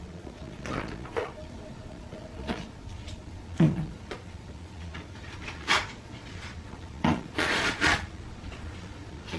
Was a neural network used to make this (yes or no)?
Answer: yes